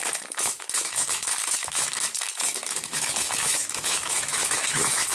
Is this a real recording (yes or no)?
no